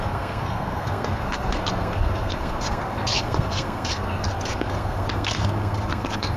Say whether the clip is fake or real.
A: fake